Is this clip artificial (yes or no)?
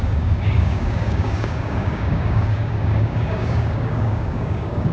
yes